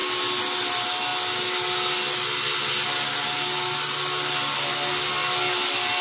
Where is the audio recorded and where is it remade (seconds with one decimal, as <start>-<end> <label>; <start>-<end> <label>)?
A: 0.0-6.0 recorded